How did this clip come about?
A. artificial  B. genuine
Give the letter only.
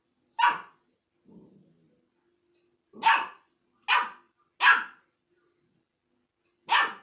B